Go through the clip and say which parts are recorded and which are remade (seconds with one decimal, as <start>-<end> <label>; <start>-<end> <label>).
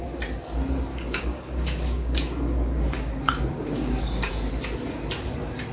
0.0-0.9 recorded; 0.9-4.3 remade; 4.3-5.7 recorded